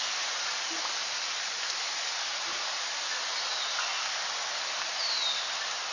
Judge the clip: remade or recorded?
recorded